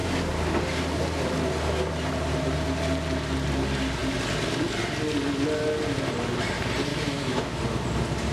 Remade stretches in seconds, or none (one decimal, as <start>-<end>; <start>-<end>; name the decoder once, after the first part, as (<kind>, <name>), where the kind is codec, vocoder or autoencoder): 6.9-7.6 (autoencoder, DAC-VAE)